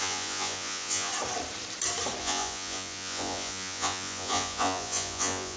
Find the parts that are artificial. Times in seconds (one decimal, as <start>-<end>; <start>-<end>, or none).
0.0-1.1; 2.2-5.6